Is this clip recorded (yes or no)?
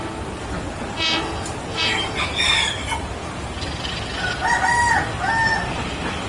yes